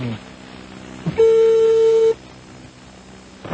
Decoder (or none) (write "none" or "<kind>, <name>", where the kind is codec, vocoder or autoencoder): none